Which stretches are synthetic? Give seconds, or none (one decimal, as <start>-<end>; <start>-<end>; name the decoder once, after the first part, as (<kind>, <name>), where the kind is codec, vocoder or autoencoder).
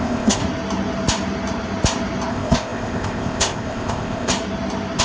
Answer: 0.0-0.4 (codec, ZipCodec); 2.3-4.3